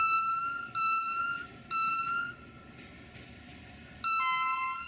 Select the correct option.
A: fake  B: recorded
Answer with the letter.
B